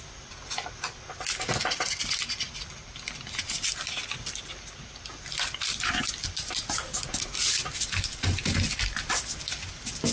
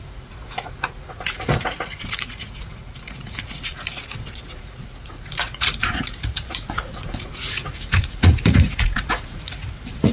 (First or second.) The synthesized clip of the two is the second